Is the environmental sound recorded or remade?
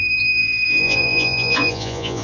remade